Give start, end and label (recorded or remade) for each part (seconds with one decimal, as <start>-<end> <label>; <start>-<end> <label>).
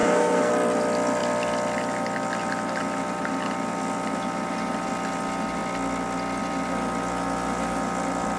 0.0-0.5 remade; 0.5-8.4 recorded